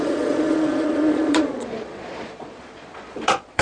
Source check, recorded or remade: remade